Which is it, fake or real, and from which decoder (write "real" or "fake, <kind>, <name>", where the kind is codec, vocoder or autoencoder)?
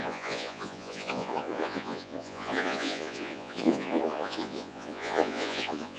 fake, vocoder, Vocos